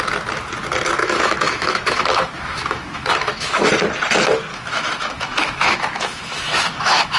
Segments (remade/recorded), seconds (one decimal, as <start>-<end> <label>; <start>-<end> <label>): 0.0-1.0 recorded; 1.0-3.7 remade; 3.7-4.5 recorded; 4.5-7.2 remade